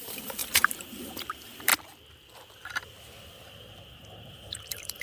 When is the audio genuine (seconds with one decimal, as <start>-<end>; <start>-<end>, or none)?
1.7-4.2